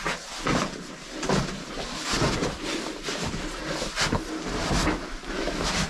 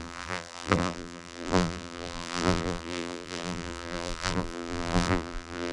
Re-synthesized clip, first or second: second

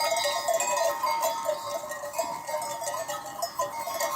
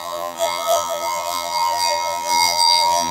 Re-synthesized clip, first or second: second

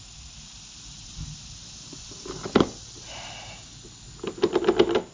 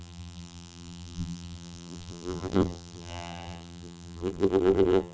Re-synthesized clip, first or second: second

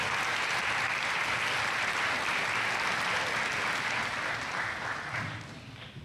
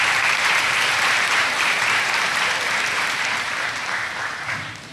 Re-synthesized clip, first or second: second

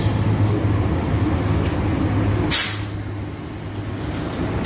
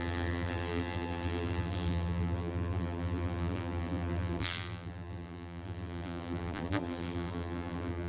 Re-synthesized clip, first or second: second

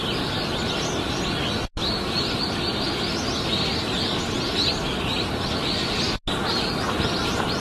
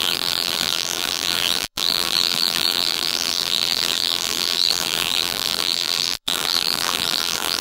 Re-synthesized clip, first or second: second